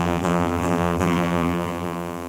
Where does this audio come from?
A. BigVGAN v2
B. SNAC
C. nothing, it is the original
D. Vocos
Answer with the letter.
A